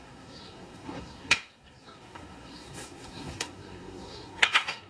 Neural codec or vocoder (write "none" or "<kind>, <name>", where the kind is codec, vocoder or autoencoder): codec, SNAC